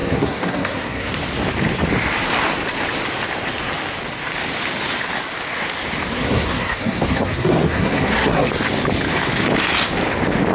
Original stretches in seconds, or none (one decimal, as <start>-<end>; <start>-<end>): 1.1-6.1; 8.5-10.5